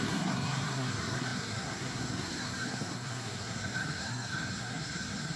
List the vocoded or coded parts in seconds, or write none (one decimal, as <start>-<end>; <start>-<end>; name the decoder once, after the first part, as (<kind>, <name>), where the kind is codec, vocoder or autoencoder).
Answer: 0.0-5.4 (codec, SNAC)

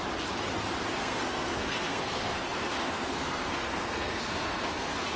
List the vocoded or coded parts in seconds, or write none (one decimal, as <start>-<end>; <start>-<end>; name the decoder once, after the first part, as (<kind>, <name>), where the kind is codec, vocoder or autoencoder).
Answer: 0.9-5.2 (codec, SNAC)

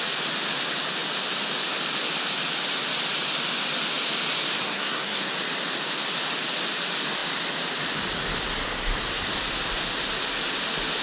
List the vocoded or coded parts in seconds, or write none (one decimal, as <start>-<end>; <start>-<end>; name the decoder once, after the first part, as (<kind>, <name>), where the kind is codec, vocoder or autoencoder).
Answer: 4.6-5.3 (codec, SNAC)

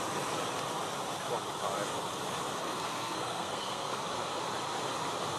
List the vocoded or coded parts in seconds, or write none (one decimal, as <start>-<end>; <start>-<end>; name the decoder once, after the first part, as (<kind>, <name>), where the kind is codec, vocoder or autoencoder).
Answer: 2.6-4.0 (codec, SNAC)

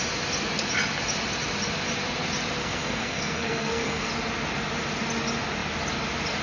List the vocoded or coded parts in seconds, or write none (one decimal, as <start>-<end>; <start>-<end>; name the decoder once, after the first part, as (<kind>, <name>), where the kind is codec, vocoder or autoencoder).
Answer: 2.6-4.1 (codec, SNAC)

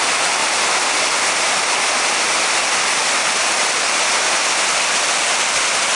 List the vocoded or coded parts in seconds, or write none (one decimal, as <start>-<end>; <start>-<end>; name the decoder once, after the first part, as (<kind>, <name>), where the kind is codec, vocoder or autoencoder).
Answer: none